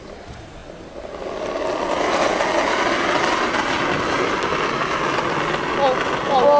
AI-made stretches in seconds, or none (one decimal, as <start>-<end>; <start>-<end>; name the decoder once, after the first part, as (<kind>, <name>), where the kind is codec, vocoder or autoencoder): none